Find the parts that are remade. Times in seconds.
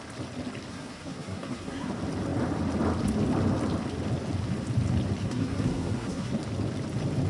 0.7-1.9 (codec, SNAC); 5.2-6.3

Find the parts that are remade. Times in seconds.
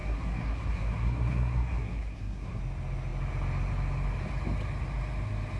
0.0-2.6 (codec, SNAC)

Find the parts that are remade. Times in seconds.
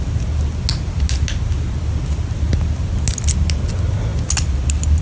none